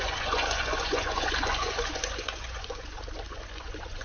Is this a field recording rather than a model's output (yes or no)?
no